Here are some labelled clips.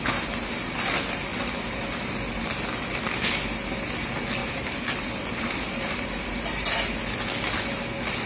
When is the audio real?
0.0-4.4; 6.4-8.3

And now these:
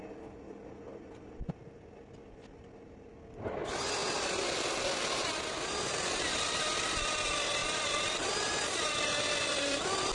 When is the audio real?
0.0-10.1

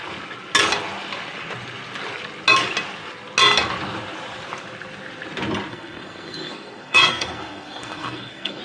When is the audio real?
0.0-5.7